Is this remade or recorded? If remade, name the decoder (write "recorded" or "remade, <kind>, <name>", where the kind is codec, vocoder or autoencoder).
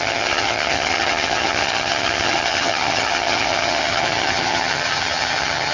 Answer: remade, vocoder, HiFi-GAN